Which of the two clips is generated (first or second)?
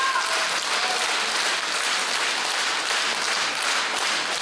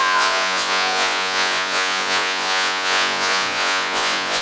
second